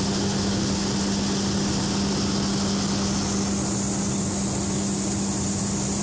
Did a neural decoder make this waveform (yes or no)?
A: no